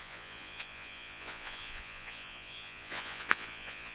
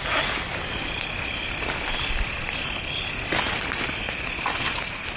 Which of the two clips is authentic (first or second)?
second